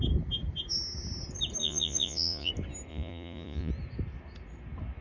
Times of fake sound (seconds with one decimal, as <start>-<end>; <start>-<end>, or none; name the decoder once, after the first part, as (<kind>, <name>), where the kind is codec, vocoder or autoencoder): 1.6-2.5 (vocoder, Vocos); 2.9-3.7